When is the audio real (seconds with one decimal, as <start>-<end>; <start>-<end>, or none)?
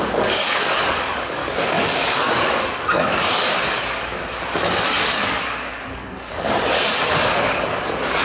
none